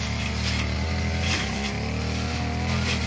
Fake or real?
real